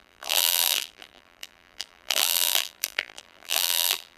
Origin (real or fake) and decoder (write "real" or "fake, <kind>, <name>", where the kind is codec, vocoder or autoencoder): fake, vocoder, BigVGAN v2